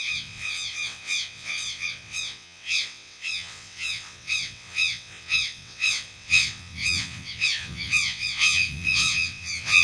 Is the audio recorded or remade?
remade